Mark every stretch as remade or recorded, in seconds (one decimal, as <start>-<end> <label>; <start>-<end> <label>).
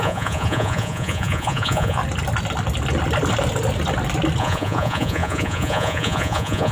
0.0-2.0 remade; 2.0-4.4 recorded; 4.4-6.7 remade